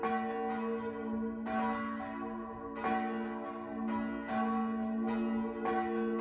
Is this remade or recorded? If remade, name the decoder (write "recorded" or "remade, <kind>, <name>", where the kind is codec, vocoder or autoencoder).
recorded